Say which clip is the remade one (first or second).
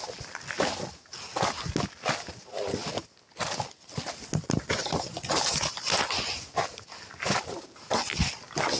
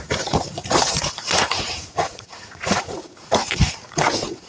second